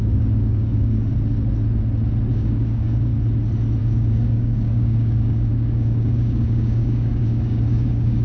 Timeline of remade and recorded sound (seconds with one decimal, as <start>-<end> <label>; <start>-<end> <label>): 0.0-1.1 remade; 1.1-2.3 recorded; 2.3-3.1 remade; 3.1-3.8 recorded; 3.8-8.2 remade